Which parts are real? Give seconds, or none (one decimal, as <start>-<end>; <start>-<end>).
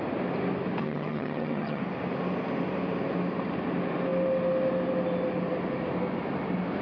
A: 0.0-0.8; 1.8-6.8